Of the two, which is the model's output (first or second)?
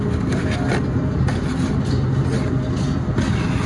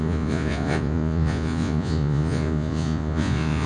second